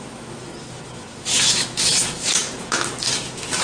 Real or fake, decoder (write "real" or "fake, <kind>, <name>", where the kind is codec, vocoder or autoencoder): fake, autoencoder, DAC-VAE